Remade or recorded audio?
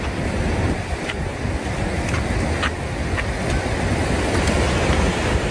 recorded